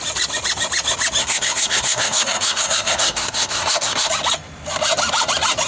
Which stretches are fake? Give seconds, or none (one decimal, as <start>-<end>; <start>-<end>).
1.2-4.1